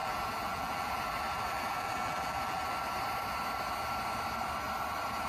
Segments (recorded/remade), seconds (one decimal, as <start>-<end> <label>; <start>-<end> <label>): 0.0-2.7 remade; 2.7-5.3 recorded